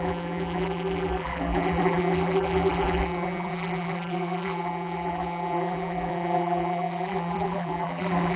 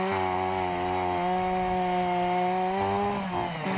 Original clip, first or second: second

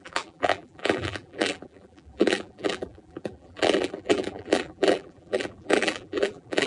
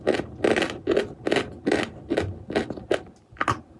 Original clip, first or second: second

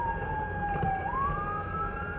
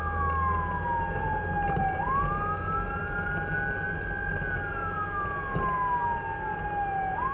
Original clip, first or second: second